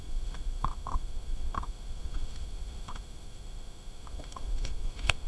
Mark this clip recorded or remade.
remade